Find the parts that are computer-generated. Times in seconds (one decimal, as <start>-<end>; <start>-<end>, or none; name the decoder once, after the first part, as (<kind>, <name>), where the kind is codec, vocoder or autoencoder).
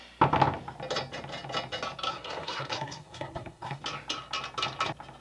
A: 2.1-3.8 (codec, SNAC)